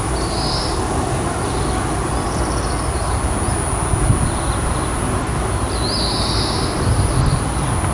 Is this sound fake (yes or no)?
no